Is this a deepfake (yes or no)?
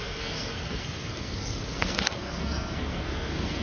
yes